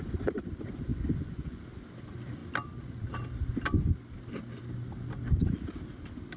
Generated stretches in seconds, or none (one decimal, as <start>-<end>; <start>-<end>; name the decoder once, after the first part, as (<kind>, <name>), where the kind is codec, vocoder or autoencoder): 0.9-1.6 (vocoder, Vocos)